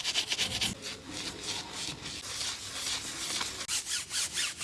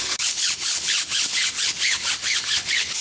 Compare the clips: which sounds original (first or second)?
first